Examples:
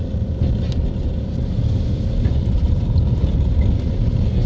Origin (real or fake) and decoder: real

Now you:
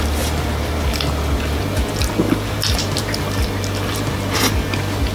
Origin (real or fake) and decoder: real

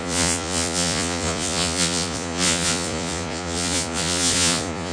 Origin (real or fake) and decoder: fake, vocoder, Vocos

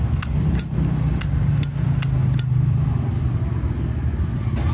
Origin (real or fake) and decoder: real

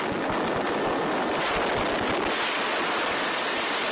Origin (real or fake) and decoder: real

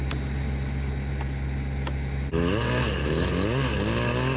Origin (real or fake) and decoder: real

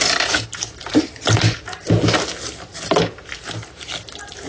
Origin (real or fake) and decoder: real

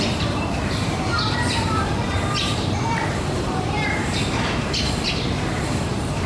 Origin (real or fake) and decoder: fake, vocoder, BigVGAN v2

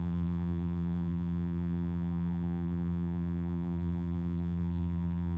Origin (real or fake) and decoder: fake, vocoder, BigVGAN v2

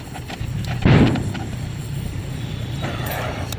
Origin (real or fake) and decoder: real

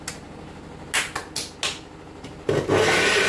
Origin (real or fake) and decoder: real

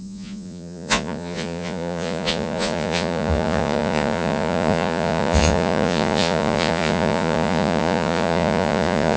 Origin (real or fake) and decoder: fake, vocoder, Vocos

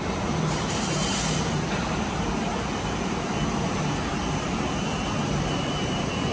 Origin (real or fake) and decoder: fake, vocoder, BigVGAN v2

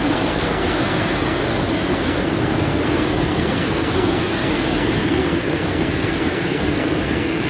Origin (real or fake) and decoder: fake, codec, SNAC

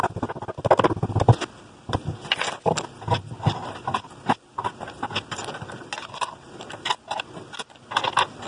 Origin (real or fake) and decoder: real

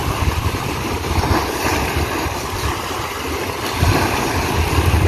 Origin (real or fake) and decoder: real